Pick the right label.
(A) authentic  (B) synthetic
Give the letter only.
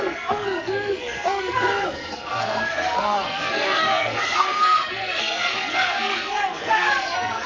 B